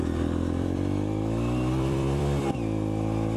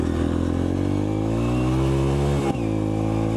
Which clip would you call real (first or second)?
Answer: second